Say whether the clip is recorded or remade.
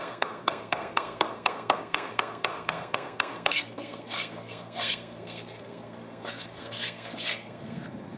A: remade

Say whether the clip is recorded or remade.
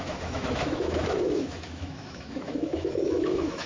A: remade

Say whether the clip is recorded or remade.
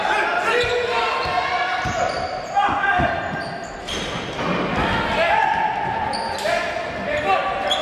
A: recorded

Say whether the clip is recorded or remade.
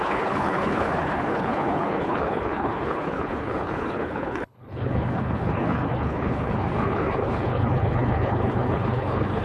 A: remade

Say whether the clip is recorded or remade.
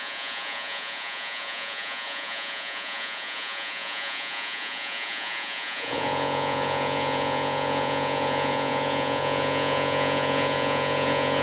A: remade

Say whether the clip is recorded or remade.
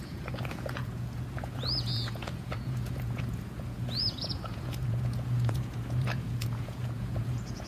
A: remade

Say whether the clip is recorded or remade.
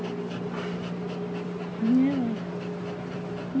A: recorded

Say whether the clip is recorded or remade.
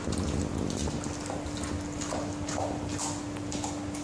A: recorded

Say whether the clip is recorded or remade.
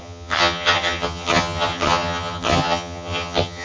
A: remade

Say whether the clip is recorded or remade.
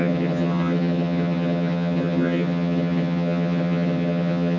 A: remade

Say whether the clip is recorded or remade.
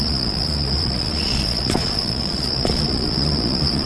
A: remade